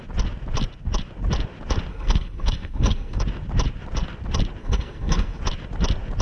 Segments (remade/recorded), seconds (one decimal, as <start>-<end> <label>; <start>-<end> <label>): 0.0-1.9 recorded; 1.9-3.2 remade; 3.2-4.6 recorded; 4.6-5.4 remade; 5.4-6.2 recorded